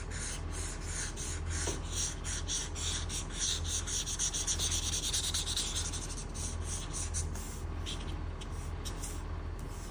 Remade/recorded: recorded